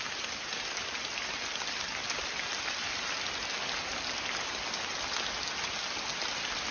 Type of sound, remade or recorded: recorded